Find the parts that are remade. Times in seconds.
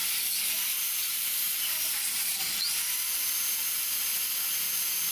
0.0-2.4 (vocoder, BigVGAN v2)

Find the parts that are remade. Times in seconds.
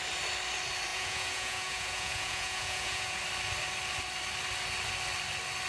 0.9-3.2 (vocoder, Vocos)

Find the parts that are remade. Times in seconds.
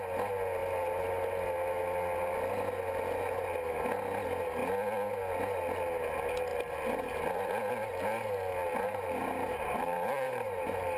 8.6-11.0 (vocoder, BigVGAN v2)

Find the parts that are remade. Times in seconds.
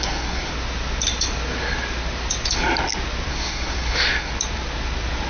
0.0-0.5 (codec, SNAC); 3.3-4.3